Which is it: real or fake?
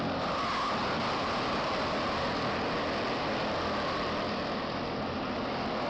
real